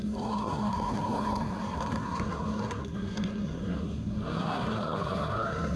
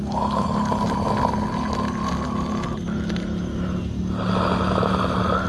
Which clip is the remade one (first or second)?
first